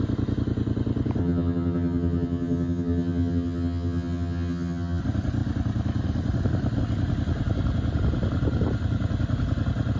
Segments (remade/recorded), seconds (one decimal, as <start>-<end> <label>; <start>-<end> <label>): 0.0-1.2 recorded; 1.2-5.0 remade; 5.0-10.0 recorded